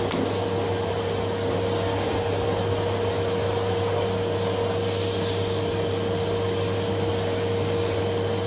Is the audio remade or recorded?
recorded